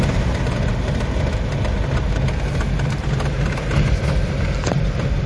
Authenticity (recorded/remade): recorded